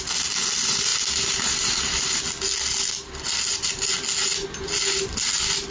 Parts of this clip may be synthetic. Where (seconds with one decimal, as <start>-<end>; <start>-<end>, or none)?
none